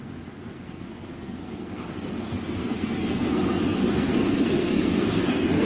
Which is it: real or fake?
fake